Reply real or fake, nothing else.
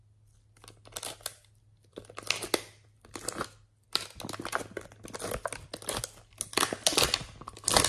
real